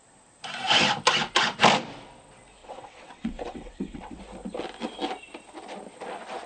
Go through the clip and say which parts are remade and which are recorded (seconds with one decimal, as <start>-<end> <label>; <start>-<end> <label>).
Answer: 0.0-2.6 recorded; 2.6-4.2 remade; 4.2-6.5 recorded